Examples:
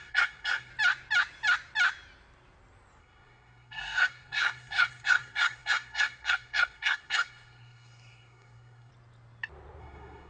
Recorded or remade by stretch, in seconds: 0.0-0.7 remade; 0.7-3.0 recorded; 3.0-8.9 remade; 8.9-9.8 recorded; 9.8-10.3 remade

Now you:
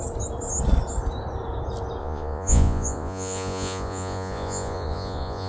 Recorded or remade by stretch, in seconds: 0.0-2.0 recorded; 2.0-5.5 remade

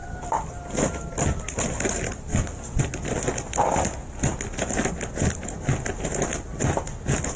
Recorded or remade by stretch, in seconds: 0.0-2.3 recorded; 2.3-2.8 remade; 2.8-7.4 recorded

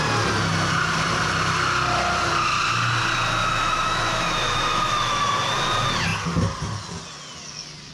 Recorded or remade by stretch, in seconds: 0.0-3.4 recorded; 3.4-5.3 remade; 5.3-7.9 recorded